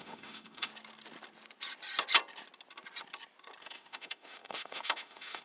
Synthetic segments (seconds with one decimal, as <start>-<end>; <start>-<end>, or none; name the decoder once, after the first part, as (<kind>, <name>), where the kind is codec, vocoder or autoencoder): 0.0-0.7 (autoencoder, DAC-VAE); 3.6-5.4